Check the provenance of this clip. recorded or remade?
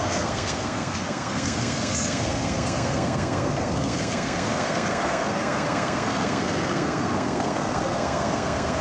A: remade